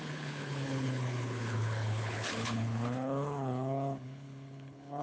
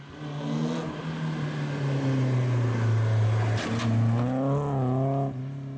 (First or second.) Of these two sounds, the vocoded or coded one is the first